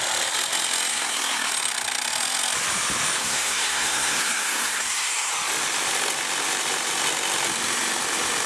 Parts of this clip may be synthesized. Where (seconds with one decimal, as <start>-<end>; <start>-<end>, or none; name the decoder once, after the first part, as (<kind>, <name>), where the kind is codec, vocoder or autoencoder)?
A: 0.9-1.5 (codec, SNAC); 3.2-5.3